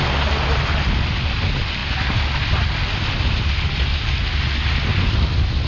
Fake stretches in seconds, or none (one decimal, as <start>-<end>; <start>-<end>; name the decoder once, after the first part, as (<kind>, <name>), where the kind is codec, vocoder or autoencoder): none